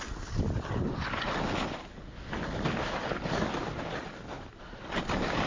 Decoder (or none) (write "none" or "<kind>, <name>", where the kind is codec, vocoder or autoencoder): none